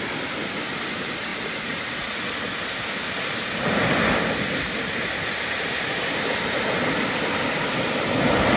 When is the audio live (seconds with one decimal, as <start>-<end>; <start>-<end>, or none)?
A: 0.0-1.3; 2.3-8.6